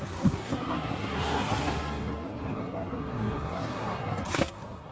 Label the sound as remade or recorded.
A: remade